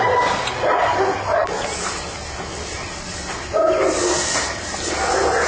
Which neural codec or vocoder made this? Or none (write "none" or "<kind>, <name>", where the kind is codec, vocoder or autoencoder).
none